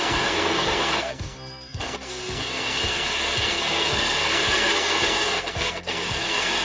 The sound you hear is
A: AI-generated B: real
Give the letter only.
A